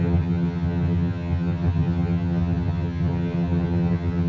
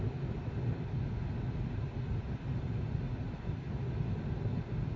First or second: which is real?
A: second